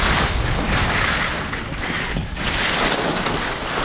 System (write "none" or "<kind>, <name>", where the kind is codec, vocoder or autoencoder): none